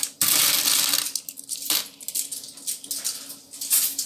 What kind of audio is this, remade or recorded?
recorded